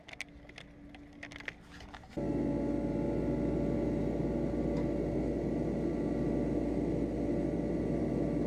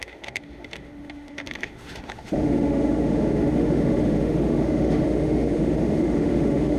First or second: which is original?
first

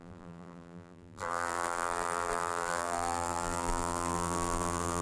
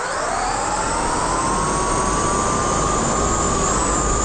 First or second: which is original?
second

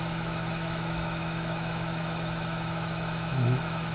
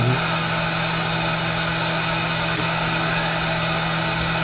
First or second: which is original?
second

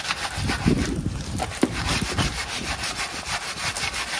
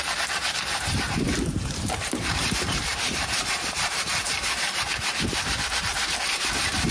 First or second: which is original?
first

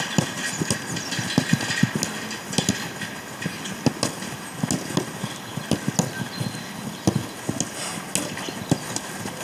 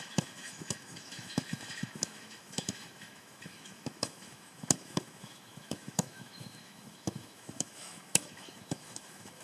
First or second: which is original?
first